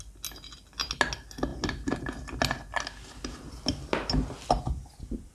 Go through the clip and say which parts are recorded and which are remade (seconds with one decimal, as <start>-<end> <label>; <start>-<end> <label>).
0.0-5.3 recorded